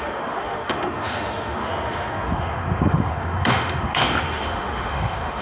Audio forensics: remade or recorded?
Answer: remade